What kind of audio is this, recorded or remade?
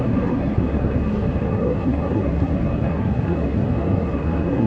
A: remade